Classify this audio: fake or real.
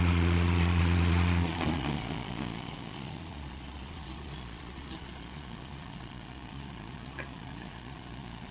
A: fake